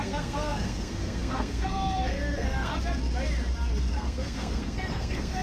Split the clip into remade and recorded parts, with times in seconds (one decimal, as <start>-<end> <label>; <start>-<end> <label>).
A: 0.0-2.7 remade; 2.7-3.8 recorded; 3.8-5.4 remade